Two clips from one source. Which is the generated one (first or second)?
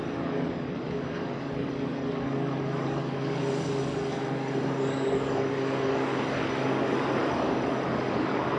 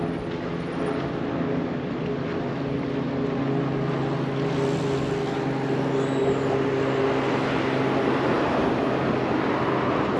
first